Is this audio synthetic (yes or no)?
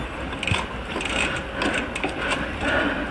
no